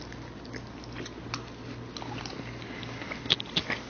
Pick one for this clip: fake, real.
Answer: real